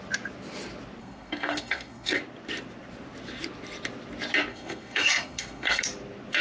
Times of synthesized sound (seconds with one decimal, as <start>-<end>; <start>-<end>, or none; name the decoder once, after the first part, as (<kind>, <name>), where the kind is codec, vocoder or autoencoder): 1.0-2.2 (codec, SNAC); 4.5-5.8